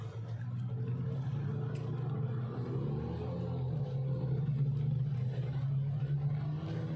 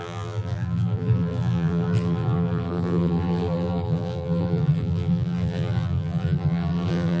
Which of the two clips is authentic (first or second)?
first